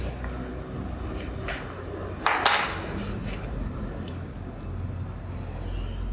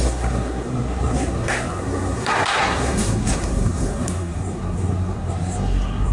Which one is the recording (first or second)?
first